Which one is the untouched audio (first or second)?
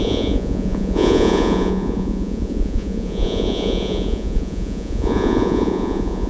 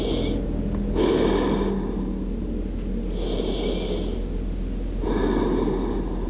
second